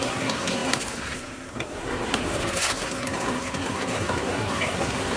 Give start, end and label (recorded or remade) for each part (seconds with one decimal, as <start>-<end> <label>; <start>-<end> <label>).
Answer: 0.0-5.2 remade